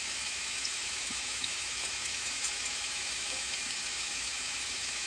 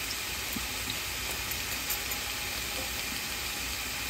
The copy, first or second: first